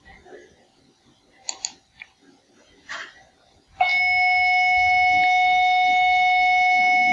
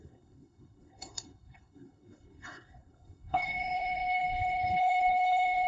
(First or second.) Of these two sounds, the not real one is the second